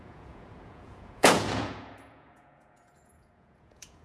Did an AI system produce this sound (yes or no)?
yes